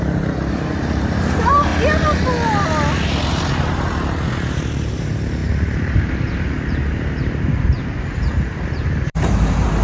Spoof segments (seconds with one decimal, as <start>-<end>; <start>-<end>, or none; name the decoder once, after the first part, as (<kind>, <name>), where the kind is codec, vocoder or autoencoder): 0.0-1.7 (vocoder, BigVGAN v2); 4.5-9.8